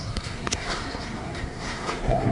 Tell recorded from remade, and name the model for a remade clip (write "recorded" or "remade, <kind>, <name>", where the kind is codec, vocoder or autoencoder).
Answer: remade, codec, SNAC